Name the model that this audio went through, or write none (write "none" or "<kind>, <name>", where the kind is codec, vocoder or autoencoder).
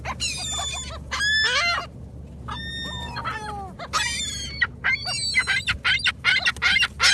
none